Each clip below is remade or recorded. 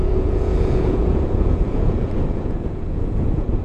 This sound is remade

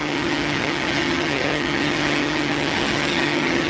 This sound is remade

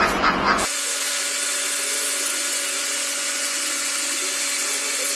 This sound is remade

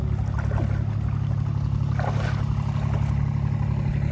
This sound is recorded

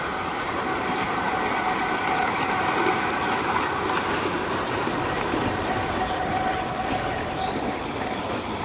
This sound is recorded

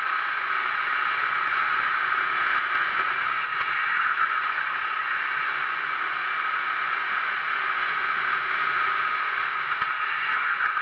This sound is remade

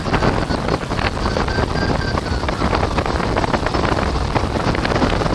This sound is recorded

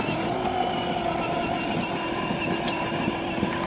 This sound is recorded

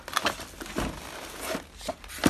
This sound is recorded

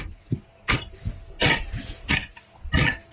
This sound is recorded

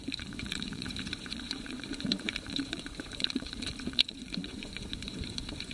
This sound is remade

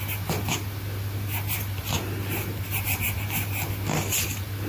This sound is recorded